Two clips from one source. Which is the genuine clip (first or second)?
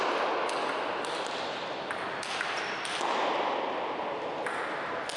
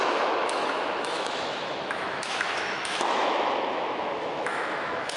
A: first